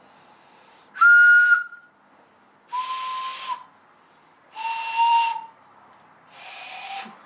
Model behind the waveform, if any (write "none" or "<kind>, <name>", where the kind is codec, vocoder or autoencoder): none